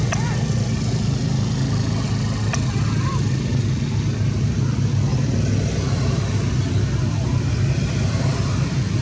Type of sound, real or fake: real